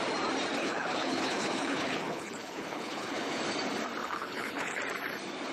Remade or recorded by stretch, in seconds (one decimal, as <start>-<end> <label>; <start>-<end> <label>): 0.0-0.6 recorded; 0.6-3.4 remade; 3.4-4.0 recorded; 4.0-4.8 remade; 4.8-5.5 recorded